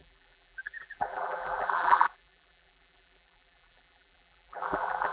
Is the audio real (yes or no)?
no